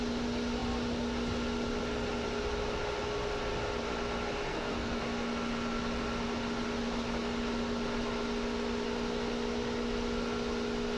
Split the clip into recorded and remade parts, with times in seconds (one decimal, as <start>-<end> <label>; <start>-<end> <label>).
0.0-4.5 recorded; 4.5-5.0 remade; 5.0-11.0 recorded